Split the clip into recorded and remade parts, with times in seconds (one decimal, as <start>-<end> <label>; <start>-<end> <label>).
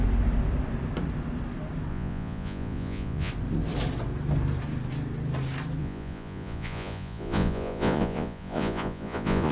0.0-1.9 recorded; 1.9-3.3 remade; 3.3-5.8 recorded; 5.8-9.5 remade